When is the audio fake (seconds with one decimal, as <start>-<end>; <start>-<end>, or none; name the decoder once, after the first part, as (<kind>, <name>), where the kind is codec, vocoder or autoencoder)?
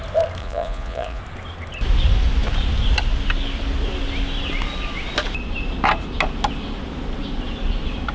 0.4-1.2 (vocoder, Vocos)